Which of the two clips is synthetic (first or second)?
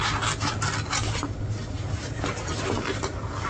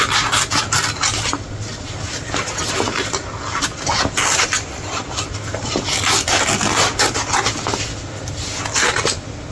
second